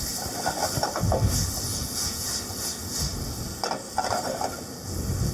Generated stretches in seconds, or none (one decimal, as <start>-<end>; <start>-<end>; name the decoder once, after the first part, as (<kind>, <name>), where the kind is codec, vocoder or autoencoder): 1.7-2.3 (vocoder, Vocos)